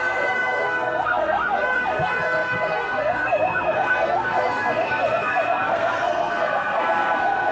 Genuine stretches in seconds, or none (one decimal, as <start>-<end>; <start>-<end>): none